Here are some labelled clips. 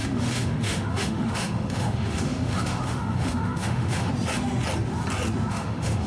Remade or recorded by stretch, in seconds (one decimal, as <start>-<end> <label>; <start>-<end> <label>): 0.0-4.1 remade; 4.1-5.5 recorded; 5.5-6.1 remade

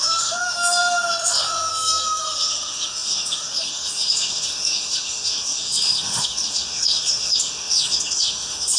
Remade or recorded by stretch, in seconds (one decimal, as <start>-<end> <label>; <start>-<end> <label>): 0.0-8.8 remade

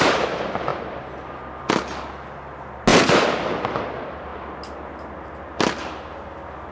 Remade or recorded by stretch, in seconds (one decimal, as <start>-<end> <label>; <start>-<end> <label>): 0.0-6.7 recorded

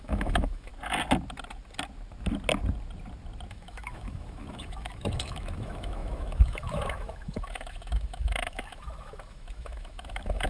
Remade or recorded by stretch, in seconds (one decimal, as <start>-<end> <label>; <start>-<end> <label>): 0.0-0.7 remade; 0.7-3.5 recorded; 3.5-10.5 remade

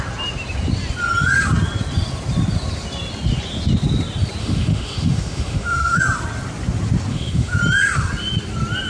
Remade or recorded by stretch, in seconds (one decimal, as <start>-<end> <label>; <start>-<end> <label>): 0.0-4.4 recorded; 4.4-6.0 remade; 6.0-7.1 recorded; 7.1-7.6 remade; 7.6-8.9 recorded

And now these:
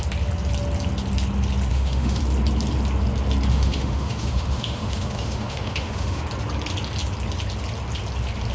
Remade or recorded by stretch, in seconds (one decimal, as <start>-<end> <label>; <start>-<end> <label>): 0.0-1.7 recorded; 1.7-2.2 remade; 2.2-3.5 recorded; 3.5-6.2 remade; 6.2-8.5 recorded

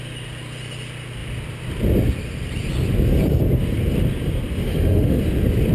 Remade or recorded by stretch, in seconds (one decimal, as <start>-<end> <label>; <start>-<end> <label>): 0.0-4.6 recorded; 4.6-5.2 remade; 5.2-5.7 recorded